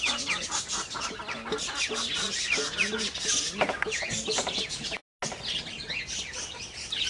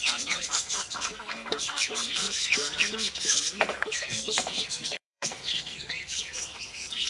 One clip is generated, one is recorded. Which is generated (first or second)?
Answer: second